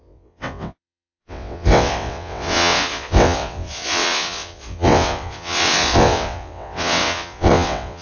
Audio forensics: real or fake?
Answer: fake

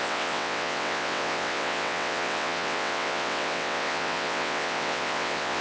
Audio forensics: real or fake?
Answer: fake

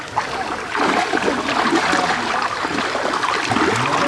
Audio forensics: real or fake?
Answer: real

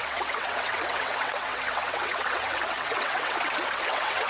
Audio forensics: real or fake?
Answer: fake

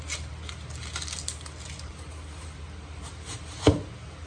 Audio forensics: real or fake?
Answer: real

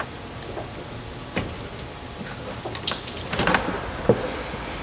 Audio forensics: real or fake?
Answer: real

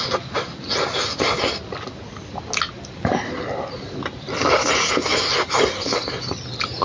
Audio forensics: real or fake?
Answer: real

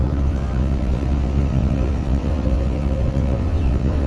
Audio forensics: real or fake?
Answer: fake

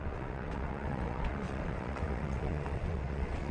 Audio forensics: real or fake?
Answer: fake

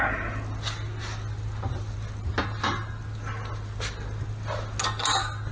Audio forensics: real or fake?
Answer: real